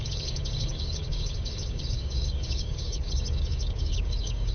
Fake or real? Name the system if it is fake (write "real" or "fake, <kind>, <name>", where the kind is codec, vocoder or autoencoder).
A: fake, codec, DAC